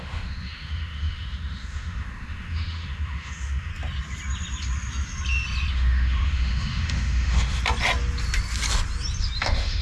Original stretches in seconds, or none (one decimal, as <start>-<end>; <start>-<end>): 3.7-5.7; 7.6-9.4